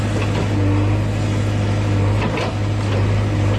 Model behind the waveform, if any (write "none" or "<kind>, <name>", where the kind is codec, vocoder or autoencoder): none